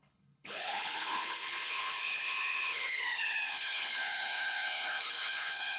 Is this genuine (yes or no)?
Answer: no